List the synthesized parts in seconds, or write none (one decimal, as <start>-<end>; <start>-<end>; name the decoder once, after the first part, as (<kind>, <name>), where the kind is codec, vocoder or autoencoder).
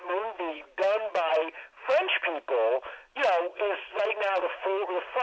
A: 0.0-1.4 (vocoder, Vocos); 3.5-5.2